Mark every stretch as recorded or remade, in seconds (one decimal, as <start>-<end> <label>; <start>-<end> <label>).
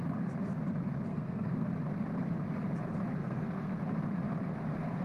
0.0-1.1 recorded; 1.1-1.7 remade; 1.7-3.2 recorded; 3.2-3.8 remade; 3.8-5.0 recorded